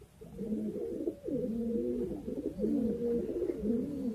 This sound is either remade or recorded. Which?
recorded